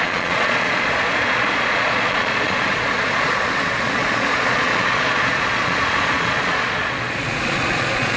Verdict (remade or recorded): remade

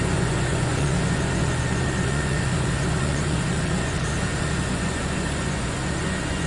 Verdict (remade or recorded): remade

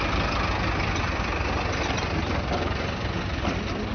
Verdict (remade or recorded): recorded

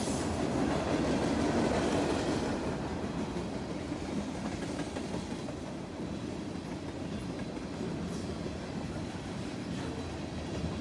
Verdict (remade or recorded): recorded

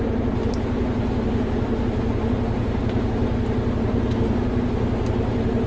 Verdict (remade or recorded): recorded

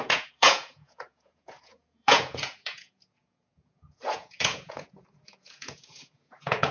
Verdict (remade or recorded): remade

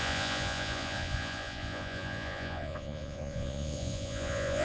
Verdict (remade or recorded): remade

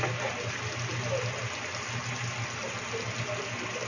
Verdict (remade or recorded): recorded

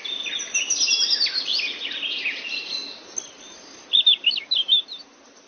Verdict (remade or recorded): recorded